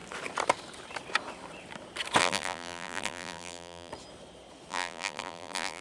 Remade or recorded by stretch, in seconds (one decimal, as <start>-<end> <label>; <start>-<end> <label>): 0.0-2.2 recorded; 2.2-3.9 remade; 3.9-4.7 recorded; 4.7-5.8 remade